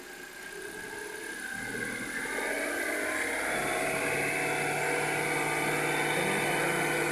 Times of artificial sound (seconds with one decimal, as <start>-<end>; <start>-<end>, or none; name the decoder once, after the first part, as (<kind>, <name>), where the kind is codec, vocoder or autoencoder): 3.6-4.3 (vocoder, BigVGAN v2)